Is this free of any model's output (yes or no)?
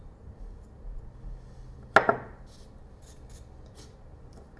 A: yes